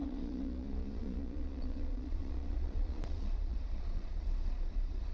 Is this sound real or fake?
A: fake